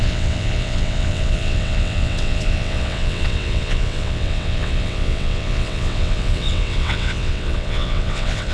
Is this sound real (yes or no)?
no